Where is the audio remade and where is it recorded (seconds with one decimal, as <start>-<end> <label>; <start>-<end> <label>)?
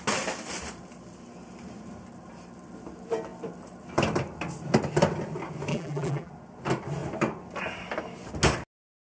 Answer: 0.0-5.7 recorded; 5.7-6.3 remade; 6.3-9.1 recorded